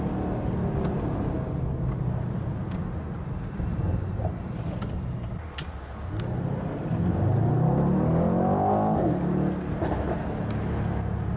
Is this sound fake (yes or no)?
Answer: no